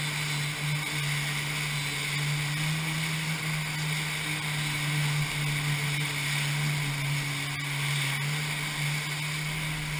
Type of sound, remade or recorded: recorded